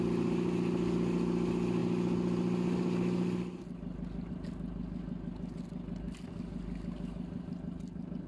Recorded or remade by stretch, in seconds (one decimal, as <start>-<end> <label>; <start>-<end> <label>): 0.0-8.3 recorded